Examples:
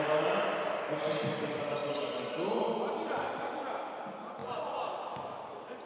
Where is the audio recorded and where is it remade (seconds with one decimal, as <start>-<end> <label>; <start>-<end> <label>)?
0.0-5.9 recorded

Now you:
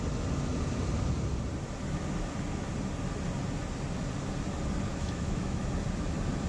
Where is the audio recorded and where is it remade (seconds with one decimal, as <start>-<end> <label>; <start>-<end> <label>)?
0.0-4.9 recorded; 4.9-5.7 remade; 5.7-6.5 recorded

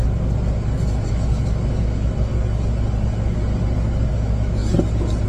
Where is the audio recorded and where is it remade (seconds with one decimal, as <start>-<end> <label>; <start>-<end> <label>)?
0.0-1.1 recorded; 1.1-2.3 remade; 2.3-4.1 recorded; 4.1-4.6 remade; 4.6-5.3 recorded